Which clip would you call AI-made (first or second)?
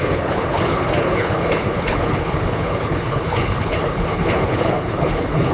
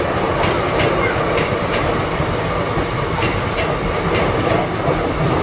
first